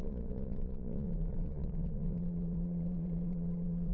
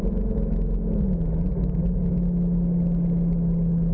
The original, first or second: second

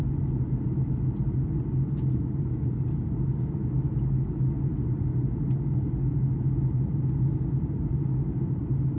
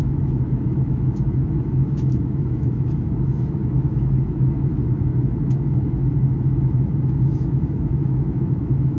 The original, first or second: first